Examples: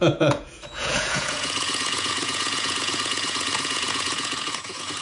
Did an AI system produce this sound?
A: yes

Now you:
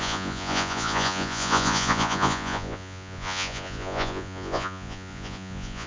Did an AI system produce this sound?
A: yes